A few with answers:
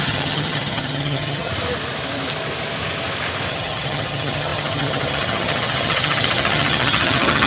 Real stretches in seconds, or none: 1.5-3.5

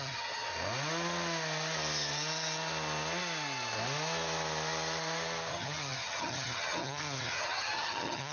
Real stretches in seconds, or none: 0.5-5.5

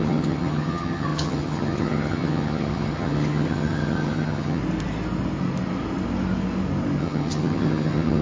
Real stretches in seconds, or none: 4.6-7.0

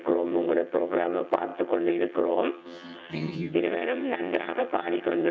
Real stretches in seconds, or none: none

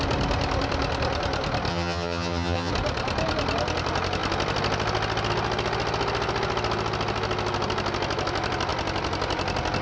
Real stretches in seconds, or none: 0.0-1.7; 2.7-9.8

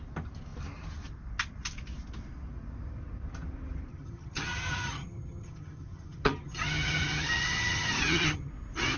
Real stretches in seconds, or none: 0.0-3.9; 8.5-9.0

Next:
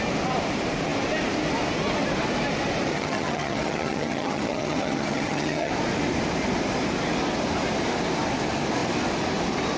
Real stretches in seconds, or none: 0.0-2.9; 5.7-9.8

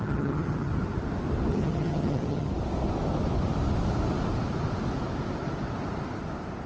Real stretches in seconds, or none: 0.7-1.5; 2.5-6.7